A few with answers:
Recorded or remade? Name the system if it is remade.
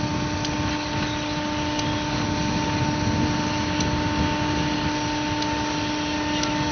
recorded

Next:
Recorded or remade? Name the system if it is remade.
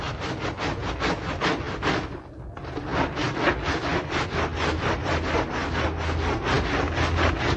recorded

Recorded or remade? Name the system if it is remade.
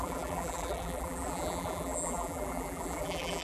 remade, vocoder, BigVGAN v2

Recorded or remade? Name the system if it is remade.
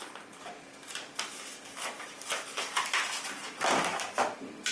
recorded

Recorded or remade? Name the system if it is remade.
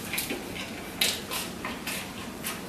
recorded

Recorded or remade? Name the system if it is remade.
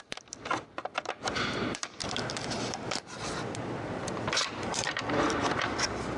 remade, vocoder, BigVGAN v2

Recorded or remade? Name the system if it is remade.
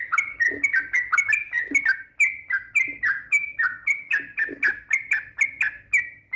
recorded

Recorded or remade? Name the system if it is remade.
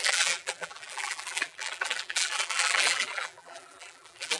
remade, vocoder, BigVGAN v2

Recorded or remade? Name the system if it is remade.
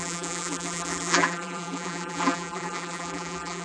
remade, vocoder, BigVGAN v2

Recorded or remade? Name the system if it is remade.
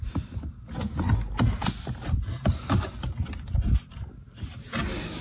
recorded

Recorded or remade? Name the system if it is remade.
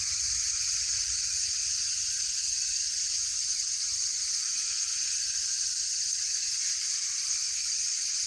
remade, vocoder, BigVGAN v2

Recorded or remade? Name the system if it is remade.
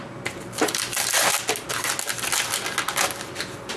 recorded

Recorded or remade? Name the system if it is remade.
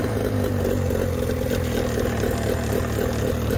recorded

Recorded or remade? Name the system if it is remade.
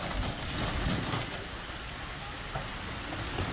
recorded